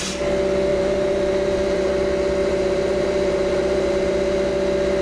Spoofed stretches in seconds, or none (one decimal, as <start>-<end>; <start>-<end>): 0.7-1.9; 2.4-4.5